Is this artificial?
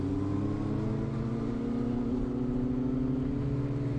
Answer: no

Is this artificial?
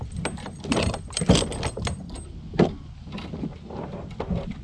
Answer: no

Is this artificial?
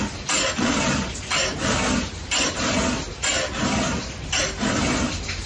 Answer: no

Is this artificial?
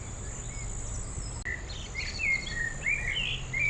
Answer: no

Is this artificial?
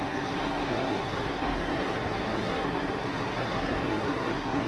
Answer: yes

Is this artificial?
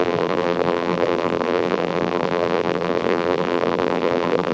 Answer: yes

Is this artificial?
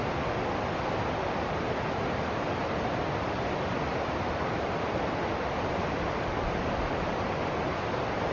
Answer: no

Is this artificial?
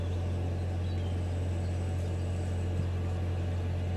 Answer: no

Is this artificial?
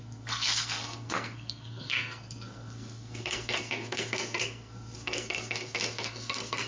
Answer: yes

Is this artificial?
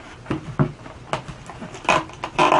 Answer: no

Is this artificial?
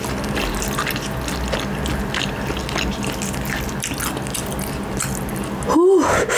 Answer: no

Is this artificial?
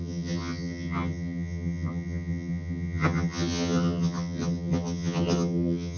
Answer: yes